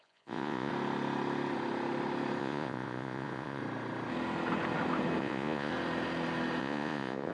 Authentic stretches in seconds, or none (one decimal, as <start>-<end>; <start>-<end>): 0.7-2.4; 3.6-5.2; 5.7-6.6